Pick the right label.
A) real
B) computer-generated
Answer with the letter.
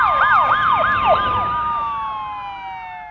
A